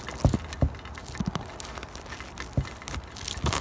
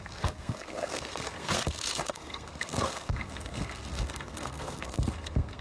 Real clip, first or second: first